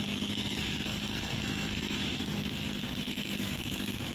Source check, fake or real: fake